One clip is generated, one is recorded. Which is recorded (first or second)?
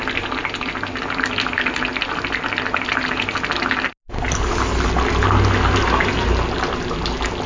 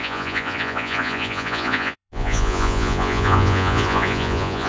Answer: first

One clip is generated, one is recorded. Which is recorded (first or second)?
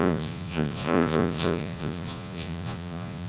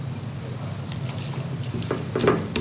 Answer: second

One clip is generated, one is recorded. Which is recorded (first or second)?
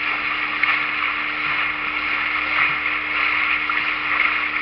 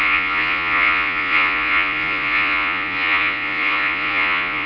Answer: first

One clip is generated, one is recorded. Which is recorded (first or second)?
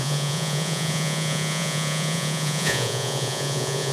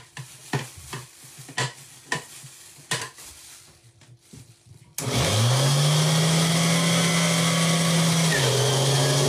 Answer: second